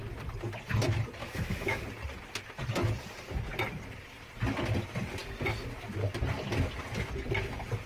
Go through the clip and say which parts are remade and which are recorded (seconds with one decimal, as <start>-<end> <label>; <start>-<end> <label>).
0.0-1.2 recorded; 1.2-1.8 remade; 1.8-7.9 recorded